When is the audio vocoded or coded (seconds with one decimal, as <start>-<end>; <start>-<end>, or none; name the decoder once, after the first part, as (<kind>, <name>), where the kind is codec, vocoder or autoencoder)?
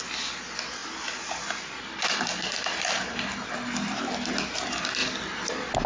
none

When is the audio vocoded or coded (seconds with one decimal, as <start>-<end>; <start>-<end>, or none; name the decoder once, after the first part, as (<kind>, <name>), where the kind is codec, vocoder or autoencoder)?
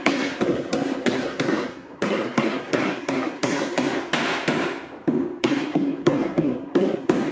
0.0-4.0 (codec, SNAC); 5.4-7.3